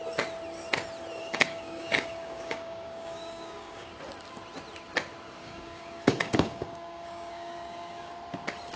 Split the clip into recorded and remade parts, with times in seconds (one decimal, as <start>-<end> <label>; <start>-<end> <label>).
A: 0.0-1.2 recorded; 1.2-3.9 remade; 3.9-5.4 recorded; 5.4-8.1 remade; 8.1-8.8 recorded